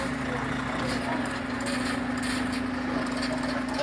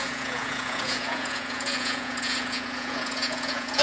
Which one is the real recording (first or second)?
first